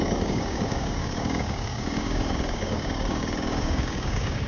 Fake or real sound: fake